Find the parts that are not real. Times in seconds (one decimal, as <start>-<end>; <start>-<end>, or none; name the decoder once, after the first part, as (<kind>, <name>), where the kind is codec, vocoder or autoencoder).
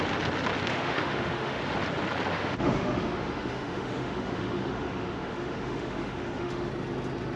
0.7-1.6 (autoencoder, DAC-VAE); 2.3-6.7